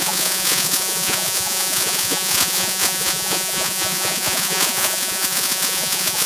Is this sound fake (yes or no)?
yes